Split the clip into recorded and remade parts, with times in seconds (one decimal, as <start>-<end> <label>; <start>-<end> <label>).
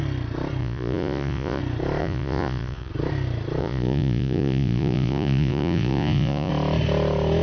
0.0-0.6 recorded; 0.6-1.6 remade; 1.6-2.0 recorded; 2.0-2.9 remade; 2.9-3.6 recorded; 3.6-6.5 remade; 6.5-7.4 recorded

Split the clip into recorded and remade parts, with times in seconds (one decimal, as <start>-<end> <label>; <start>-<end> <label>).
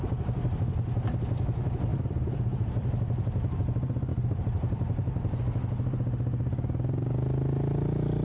0.0-1.9 recorded; 1.9-3.6 remade; 3.6-4.1 recorded; 4.1-5.4 remade; 5.4-8.2 recorded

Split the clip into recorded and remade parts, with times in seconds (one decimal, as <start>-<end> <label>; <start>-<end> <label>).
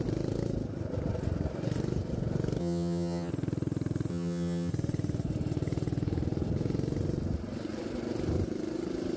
0.0-2.6 recorded; 2.6-3.3 remade; 3.3-4.1 recorded; 4.1-4.7 remade; 4.7-9.2 recorded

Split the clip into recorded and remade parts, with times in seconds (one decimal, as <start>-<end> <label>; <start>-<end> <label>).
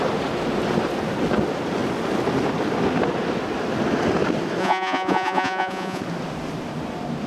0.0-4.6 recorded; 4.6-6.0 remade; 6.0-7.3 recorded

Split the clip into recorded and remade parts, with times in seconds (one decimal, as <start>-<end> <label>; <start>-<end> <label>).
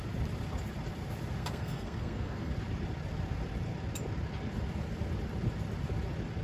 0.0-1.4 recorded; 1.4-2.5 remade; 2.5-6.4 recorded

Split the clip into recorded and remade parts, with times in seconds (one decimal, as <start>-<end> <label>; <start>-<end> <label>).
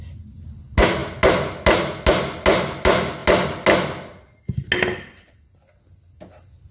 0.0-6.7 recorded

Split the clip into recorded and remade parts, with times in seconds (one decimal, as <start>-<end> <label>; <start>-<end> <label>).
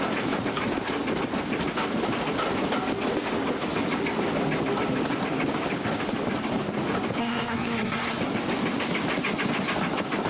0.0-7.2 recorded; 7.2-8.2 remade; 8.2-10.3 recorded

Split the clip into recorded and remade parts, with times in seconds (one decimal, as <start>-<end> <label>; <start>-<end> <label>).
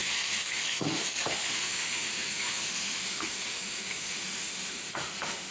0.0-5.5 remade